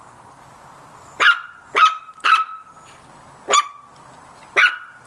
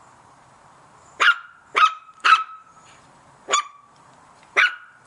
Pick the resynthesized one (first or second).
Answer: second